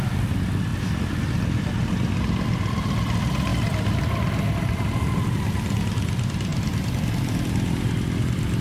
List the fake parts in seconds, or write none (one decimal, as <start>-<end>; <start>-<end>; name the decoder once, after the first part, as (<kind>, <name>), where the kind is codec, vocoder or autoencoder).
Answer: none